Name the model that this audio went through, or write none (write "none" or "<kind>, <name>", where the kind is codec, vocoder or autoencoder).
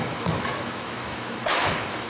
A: autoencoder, DAC-VAE